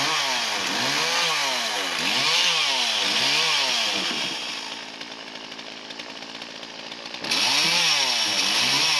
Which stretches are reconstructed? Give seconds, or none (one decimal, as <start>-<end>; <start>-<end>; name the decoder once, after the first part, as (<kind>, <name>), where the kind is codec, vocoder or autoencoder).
none